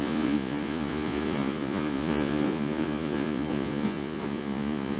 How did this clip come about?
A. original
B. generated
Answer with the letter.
B